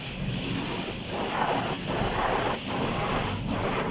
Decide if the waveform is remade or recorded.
recorded